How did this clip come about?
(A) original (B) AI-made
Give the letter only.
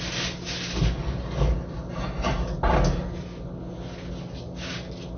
A